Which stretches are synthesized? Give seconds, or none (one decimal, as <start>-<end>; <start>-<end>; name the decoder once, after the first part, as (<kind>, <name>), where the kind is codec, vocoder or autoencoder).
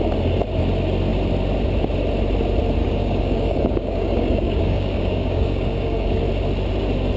2.8-6.2 (codec, DAC)